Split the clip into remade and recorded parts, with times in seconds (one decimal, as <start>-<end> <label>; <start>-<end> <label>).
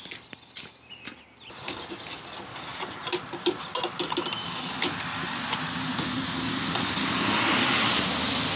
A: 0.0-2.7 recorded; 2.7-3.2 remade; 3.2-8.6 recorded